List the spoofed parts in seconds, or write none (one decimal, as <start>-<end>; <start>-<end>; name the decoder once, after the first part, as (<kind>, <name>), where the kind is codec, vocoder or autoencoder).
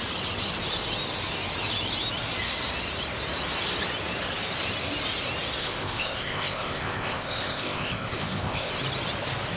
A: 5.6-8.7 (codec, ZipCodec)